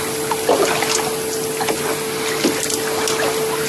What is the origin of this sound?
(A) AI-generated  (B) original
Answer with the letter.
B